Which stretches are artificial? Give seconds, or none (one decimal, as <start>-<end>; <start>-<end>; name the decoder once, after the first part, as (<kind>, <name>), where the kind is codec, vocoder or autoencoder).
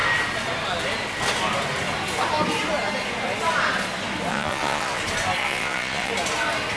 4.3-5.0 (vocoder, Vocos); 5.4-6.1